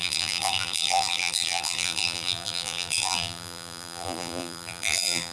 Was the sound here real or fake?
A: fake